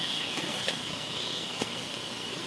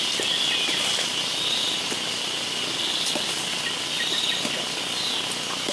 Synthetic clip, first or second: first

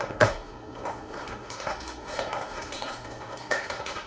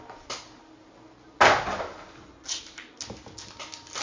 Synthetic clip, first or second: first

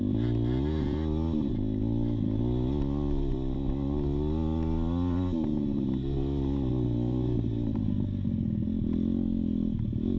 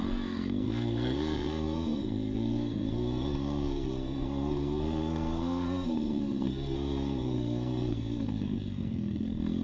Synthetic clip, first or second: second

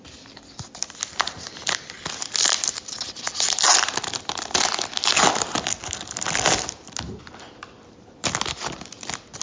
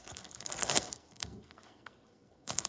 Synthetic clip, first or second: second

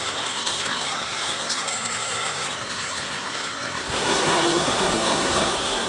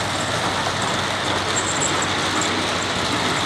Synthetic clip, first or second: first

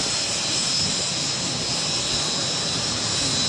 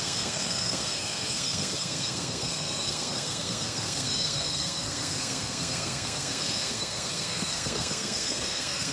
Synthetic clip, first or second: second